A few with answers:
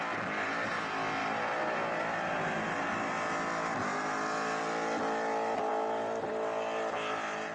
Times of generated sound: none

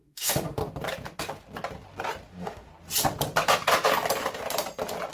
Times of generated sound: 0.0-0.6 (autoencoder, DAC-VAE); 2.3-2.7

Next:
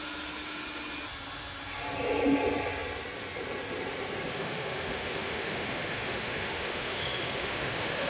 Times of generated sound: 4.3-8.1 (autoencoder, DAC-VAE)

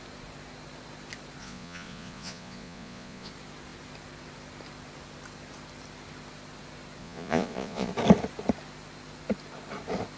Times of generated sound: 1.4-3.3 (vocoder, Vocos); 7.0-7.9

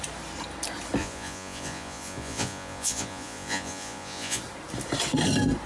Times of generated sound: 1.0-4.4 (vocoder, Vocos)